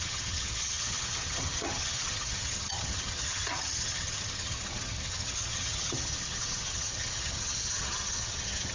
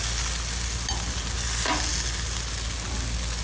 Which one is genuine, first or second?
second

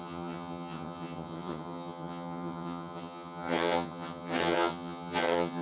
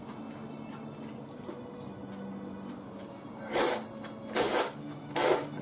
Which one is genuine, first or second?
second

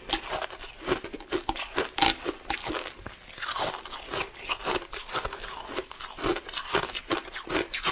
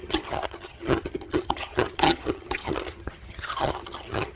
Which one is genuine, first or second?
first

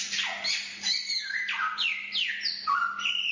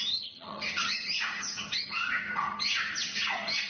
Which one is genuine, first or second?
first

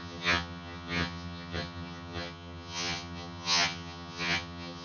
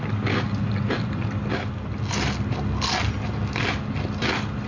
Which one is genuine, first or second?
second